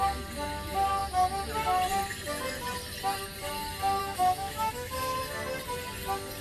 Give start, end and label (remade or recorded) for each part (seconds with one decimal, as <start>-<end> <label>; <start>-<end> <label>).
0.0-4.0 recorded; 4.0-5.2 remade; 5.2-6.4 recorded